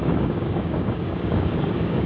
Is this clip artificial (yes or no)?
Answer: yes